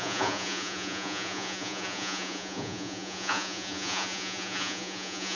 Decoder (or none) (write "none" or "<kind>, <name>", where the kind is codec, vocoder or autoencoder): vocoder, Vocos